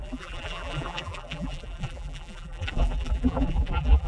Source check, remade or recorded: remade